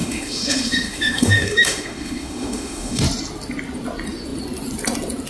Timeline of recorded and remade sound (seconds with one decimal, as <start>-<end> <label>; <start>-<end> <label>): 0.0-3.0 remade; 3.0-5.3 recorded